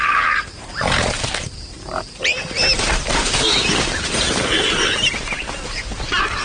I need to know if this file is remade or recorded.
remade